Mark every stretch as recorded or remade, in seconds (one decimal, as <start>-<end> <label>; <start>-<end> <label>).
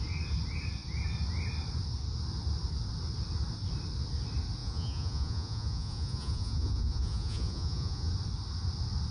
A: 0.0-4.6 recorded; 4.6-8.1 remade; 8.1-9.1 recorded